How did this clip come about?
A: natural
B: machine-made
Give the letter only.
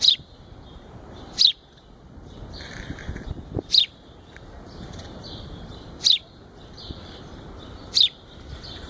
B